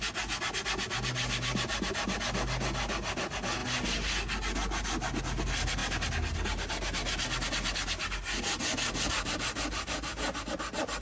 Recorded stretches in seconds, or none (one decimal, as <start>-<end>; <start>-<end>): 0.0-11.0